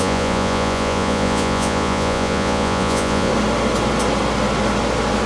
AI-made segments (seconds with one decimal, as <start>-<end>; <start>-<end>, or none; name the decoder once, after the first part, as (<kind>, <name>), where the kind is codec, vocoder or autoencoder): 0.0-3.3 (vocoder, Vocos)